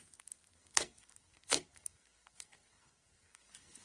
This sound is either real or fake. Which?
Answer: fake